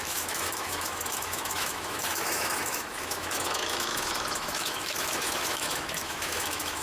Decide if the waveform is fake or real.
fake